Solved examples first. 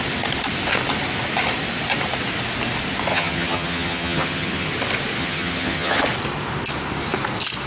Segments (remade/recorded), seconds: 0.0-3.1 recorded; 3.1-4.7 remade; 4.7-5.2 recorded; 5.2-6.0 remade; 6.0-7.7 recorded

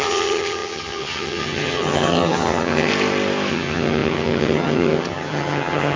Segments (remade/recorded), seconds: 0.0-2.9 remade; 2.9-3.5 recorded; 3.5-6.0 remade

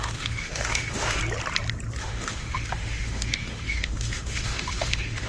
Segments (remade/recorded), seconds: 0.0-1.2 remade; 1.2-2.0 recorded; 2.0-5.3 remade

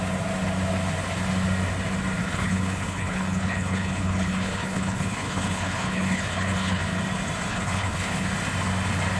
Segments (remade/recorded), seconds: 0.0-2.2 recorded; 2.2-6.8 remade; 6.8-7.5 recorded; 7.5-8.3 remade; 8.3-9.2 recorded

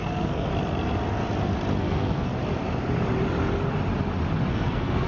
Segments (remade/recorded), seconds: 0.0-0.5 remade; 0.5-1.8 recorded; 1.8-2.3 remade; 2.3-4.5 recorded; 4.5-5.1 remade

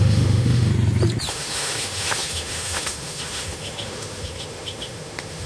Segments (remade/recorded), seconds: 0.0-0.7 remade; 0.7-1.3 recorded; 1.3-5.5 remade